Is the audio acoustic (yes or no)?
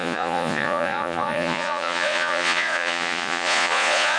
no